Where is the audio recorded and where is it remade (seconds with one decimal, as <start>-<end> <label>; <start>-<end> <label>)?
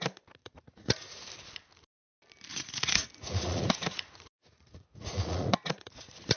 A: 0.0-0.4 recorded; 0.4-1.2 remade; 1.2-2.5 recorded; 2.5-6.4 remade